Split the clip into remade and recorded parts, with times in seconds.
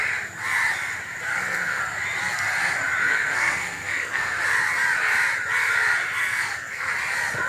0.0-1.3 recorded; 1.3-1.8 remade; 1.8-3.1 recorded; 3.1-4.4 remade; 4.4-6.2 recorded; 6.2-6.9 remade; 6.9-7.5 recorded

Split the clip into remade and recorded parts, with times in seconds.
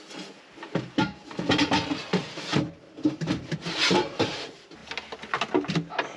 0.0-6.2 recorded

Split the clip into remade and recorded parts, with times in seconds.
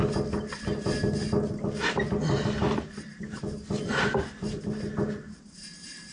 0.0-6.1 recorded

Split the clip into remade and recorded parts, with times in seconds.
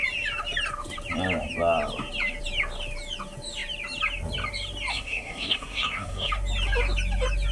0.0-4.9 recorded; 4.9-6.3 remade; 6.3-7.5 recorded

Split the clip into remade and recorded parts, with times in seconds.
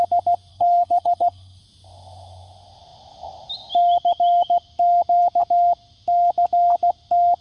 0.0-0.5 recorded; 0.5-1.6 remade; 1.6-7.4 recorded